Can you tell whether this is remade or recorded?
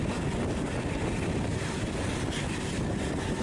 recorded